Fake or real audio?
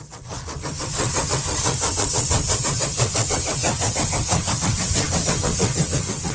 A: fake